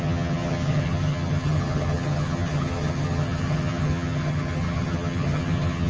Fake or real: fake